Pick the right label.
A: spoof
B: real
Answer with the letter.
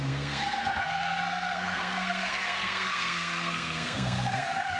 A